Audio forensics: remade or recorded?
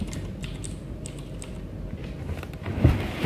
recorded